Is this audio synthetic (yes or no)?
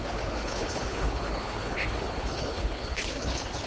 yes